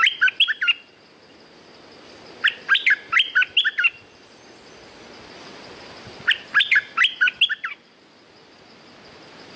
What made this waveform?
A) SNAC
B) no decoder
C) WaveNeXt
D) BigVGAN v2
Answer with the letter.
B